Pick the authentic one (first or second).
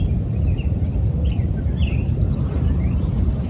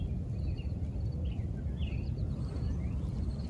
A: second